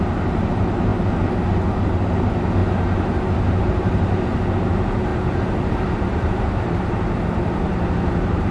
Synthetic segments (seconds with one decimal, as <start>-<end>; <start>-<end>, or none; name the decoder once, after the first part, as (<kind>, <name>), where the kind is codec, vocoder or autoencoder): 0.0-0.9 (vocoder, BigVGAN v2); 2.1-8.5